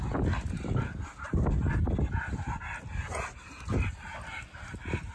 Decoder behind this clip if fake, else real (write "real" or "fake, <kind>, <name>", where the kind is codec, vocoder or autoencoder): real